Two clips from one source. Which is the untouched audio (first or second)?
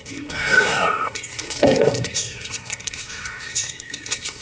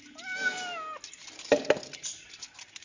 second